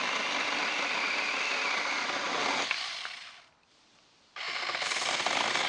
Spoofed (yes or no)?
no